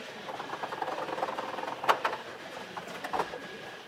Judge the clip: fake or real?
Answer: real